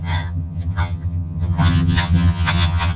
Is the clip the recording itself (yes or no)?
no